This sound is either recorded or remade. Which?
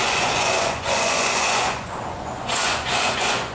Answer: remade